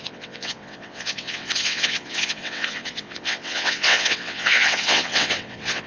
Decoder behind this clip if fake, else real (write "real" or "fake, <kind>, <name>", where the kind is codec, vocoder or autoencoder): fake, vocoder, WaveNeXt